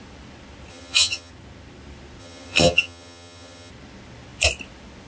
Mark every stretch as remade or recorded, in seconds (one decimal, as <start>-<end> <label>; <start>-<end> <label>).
0.0-0.7 recorded; 0.7-1.3 remade; 1.3-2.2 recorded; 2.2-3.7 remade; 3.7-5.1 recorded

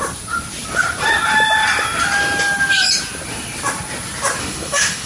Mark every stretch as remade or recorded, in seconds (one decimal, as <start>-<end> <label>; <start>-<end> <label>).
0.0-4.4 recorded; 4.4-5.1 remade

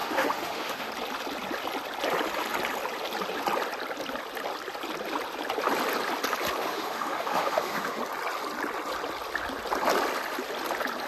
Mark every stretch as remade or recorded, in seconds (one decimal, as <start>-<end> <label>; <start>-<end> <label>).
0.0-0.9 remade; 0.9-6.6 recorded; 6.6-8.0 remade; 8.0-11.1 recorded

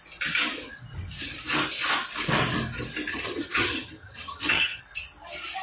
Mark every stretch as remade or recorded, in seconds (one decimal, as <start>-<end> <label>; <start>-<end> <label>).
0.0-3.1 recorded; 3.1-4.8 remade; 4.8-5.6 recorded

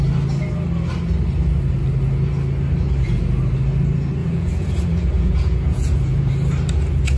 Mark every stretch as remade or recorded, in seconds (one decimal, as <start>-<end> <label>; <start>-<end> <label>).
0.0-4.2 recorded; 4.2-6.3 remade; 6.3-7.2 recorded

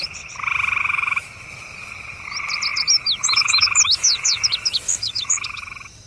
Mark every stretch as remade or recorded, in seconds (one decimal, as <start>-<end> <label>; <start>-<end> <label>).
0.0-0.8 recorded; 0.8-1.5 remade; 1.5-2.7 recorded; 2.7-6.1 remade

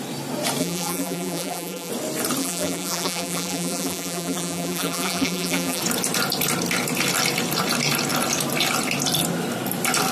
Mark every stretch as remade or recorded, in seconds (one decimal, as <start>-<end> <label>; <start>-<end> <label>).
0.0-0.6 recorded; 0.6-1.9 remade; 1.9-2.4 recorded; 2.4-5.8 remade; 5.8-10.1 recorded